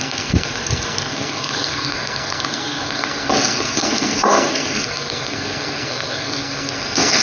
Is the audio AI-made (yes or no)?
yes